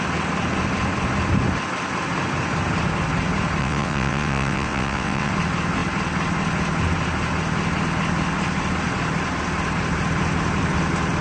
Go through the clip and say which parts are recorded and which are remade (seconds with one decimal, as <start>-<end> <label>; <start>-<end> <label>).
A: 0.0-3.6 recorded; 3.6-5.3 remade; 5.3-11.2 recorded